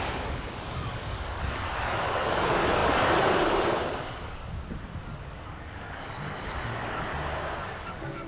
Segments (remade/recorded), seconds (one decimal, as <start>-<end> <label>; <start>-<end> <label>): 0.0-4.4 remade; 4.4-5.1 recorded; 5.1-7.1 remade; 7.1-7.8 recorded; 7.8-8.3 remade